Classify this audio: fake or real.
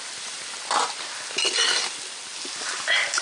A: real